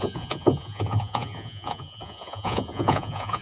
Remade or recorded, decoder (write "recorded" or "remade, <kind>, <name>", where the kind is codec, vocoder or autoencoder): remade, vocoder, Vocos